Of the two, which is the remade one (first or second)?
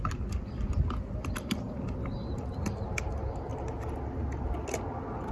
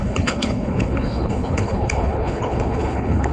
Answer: second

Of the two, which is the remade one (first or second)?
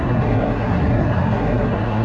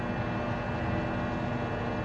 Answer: first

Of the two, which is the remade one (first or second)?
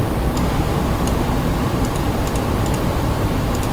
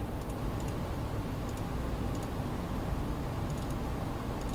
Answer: first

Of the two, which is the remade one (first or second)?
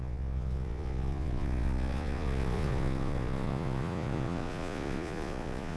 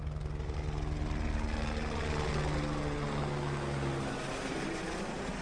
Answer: first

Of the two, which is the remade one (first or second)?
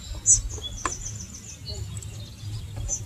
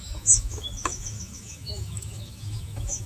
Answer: second